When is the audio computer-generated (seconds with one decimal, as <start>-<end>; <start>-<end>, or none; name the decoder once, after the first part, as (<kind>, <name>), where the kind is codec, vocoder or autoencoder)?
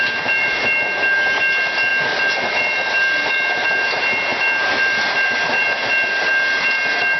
none